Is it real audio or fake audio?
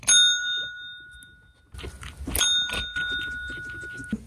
real